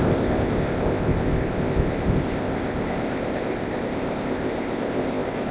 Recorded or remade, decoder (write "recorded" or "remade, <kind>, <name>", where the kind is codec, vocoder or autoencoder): remade, codec, ZipCodec